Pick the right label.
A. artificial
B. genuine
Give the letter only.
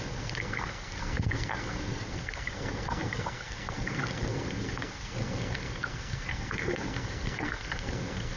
A